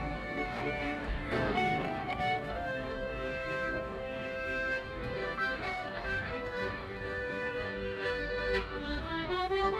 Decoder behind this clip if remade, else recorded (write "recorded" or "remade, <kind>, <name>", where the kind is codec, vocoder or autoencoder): remade, codec, DAC